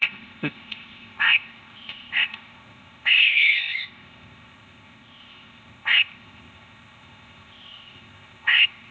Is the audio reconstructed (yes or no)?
yes